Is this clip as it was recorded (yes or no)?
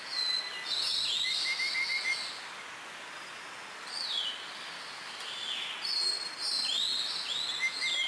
yes